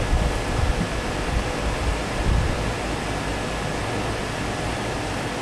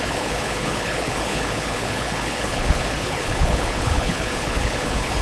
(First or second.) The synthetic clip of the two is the second